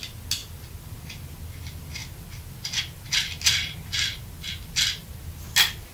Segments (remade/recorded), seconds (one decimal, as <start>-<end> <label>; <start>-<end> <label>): 0.0-5.9 recorded